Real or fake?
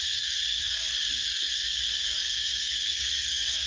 fake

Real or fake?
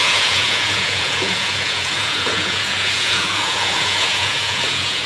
fake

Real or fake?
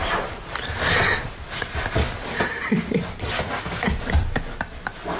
real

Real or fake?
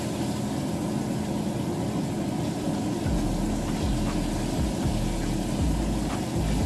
real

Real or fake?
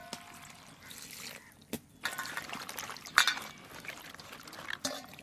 real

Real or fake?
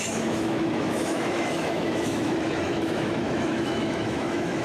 fake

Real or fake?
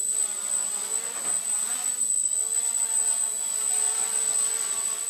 real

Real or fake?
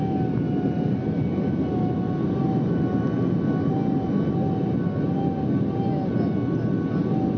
real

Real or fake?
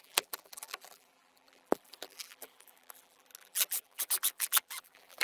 fake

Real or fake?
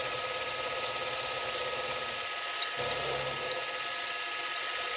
real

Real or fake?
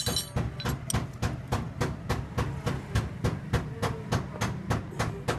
real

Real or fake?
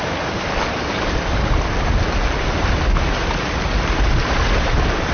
real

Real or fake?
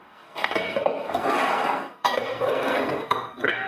fake